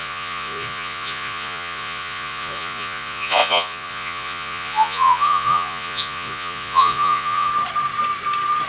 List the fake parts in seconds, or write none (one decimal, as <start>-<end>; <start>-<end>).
0.0-7.5